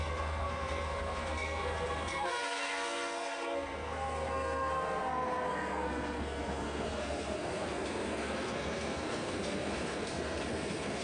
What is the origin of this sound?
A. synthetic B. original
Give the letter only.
A